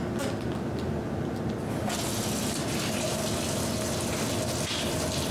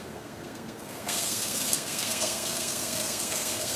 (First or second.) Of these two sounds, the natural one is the first